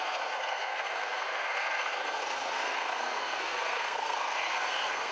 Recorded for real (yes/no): no